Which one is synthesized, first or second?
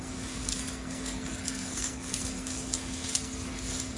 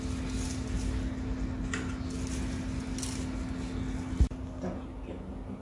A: first